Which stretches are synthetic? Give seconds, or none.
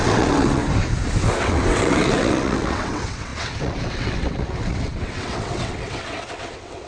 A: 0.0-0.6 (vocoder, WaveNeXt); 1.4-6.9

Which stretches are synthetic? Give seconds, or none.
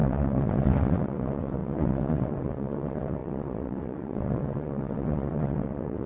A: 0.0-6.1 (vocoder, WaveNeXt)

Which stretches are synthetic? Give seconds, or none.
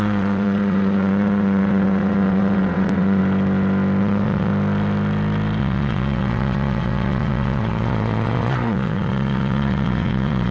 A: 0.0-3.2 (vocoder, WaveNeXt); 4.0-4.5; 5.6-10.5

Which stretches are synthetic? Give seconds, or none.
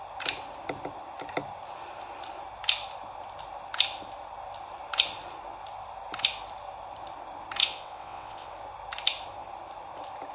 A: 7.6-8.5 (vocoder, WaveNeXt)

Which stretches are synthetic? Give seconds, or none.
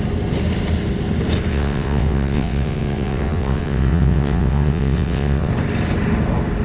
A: 1.5-5.5 (vocoder, WaveNeXt)